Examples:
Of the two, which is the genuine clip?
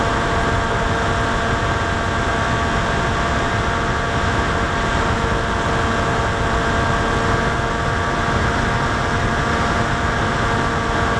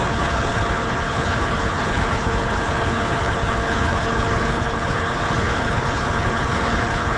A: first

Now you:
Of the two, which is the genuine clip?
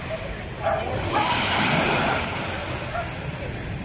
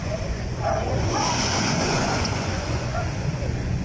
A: first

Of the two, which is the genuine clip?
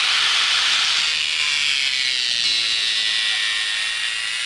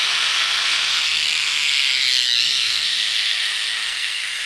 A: first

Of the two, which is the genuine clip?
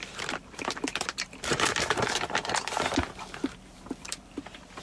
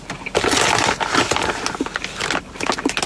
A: second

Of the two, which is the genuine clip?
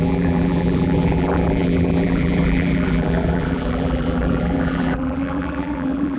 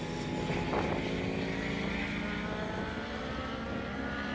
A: second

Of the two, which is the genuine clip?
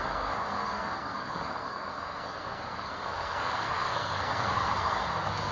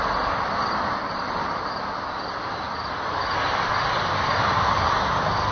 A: second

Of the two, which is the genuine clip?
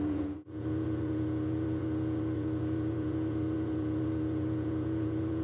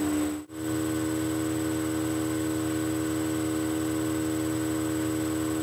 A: second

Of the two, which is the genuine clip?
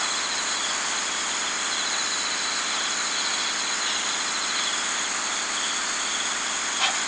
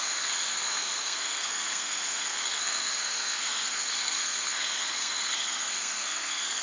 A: first